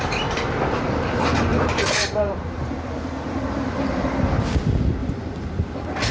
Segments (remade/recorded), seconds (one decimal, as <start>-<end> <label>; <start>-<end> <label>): 0.0-1.5 recorded; 1.5-3.4 remade; 3.4-5.0 recorded; 5.0-5.6 remade; 5.6-6.1 recorded